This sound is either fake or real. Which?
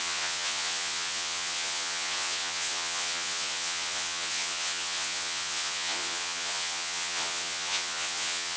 fake